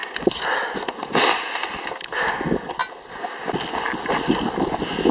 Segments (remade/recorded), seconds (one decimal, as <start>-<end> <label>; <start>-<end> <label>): 0.0-5.1 recorded